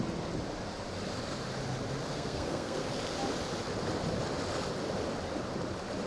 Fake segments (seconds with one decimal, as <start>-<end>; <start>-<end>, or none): 2.1-2.9